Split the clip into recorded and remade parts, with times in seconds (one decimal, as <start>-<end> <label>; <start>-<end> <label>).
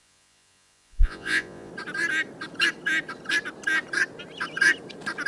0.0-1.7 remade; 1.7-5.3 recorded